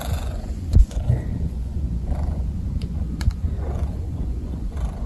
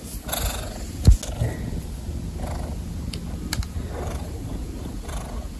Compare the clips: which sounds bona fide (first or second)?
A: second